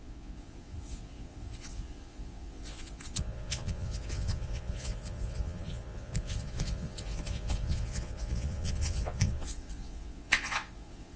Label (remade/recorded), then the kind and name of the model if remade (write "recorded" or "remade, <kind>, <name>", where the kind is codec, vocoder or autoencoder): remade, vocoder, Vocos